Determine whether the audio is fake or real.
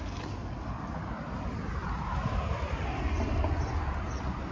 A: real